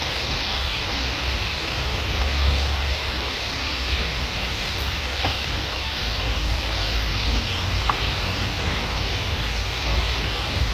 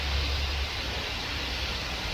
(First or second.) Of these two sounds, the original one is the second